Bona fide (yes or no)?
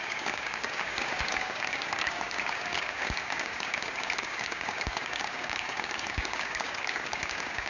no